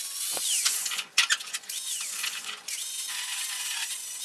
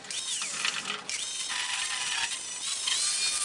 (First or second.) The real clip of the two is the second